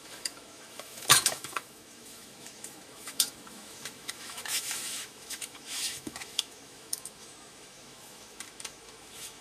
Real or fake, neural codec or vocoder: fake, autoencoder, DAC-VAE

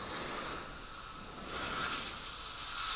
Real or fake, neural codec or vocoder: real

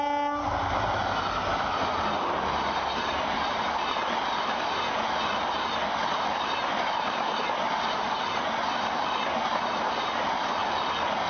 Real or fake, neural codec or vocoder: real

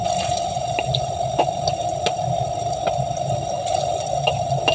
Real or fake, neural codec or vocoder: real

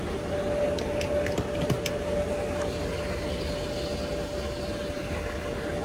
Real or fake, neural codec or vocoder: real